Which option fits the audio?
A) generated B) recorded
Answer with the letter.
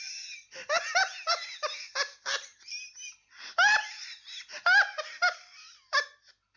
B